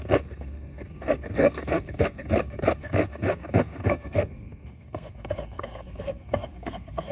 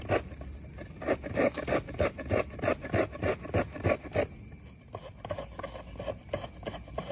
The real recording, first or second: second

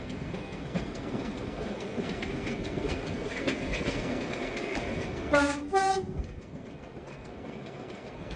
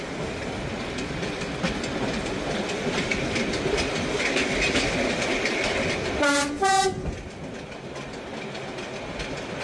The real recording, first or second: second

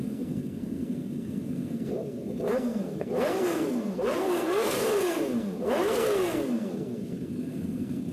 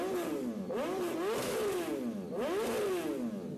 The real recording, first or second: second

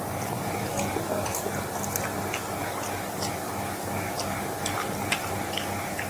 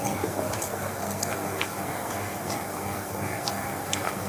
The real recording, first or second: first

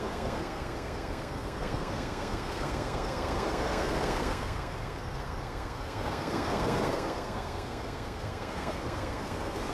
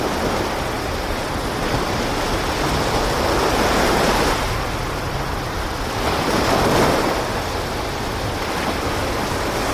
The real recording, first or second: second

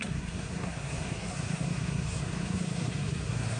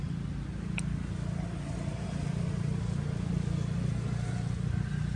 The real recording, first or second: second